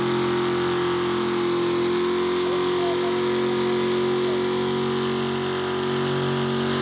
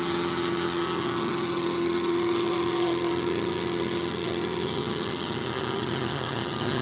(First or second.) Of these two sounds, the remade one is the second